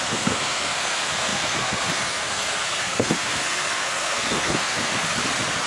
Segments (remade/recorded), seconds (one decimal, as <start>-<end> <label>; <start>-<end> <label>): 0.0-4.9 remade; 4.9-5.7 recorded